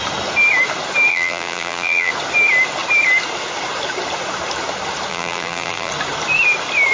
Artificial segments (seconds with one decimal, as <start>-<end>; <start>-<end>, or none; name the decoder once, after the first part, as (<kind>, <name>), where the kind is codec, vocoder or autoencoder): 1.1-2.1 (vocoder, BigVGAN v2); 5.1-5.9